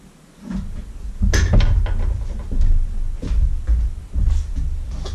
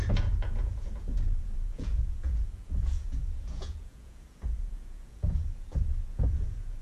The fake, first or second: second